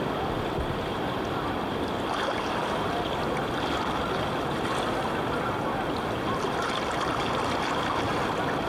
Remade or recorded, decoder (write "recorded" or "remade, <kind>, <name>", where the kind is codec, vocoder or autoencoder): recorded